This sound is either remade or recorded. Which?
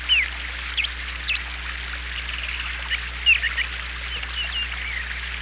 recorded